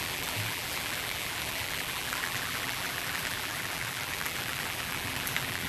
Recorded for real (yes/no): no